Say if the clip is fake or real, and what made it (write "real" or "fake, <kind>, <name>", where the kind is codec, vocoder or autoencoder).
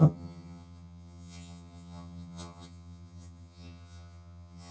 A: fake, vocoder, HiFi-GAN